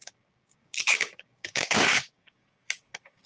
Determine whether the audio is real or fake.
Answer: fake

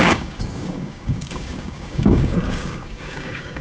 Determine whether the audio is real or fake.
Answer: fake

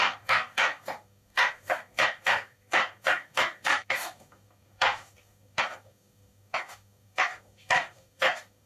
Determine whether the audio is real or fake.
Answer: fake